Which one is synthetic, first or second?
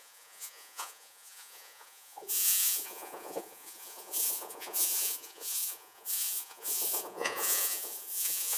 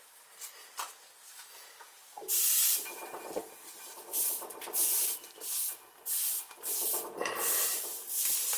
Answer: first